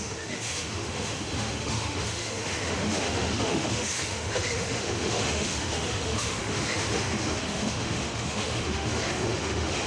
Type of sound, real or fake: fake